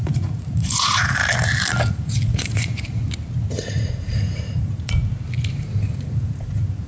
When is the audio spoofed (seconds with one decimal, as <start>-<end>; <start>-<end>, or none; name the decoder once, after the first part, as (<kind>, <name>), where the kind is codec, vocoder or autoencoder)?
0.0-1.2 (vocoder, Vocos); 1.9-3.0; 3.6-5.0; 5.5-6.9